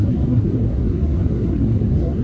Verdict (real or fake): fake